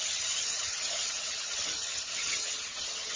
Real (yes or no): no